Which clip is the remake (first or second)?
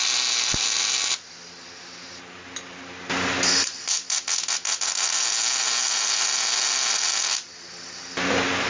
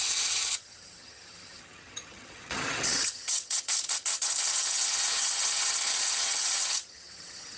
second